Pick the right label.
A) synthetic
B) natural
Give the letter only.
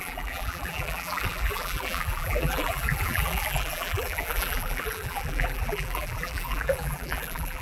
A